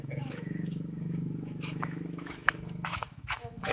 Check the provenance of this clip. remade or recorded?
remade